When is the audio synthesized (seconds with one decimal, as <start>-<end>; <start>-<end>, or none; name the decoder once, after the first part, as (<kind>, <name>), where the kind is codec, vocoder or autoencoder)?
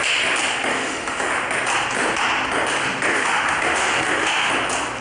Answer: 0.7-1.3 (autoencoder, DAC-VAE); 3.1-4.5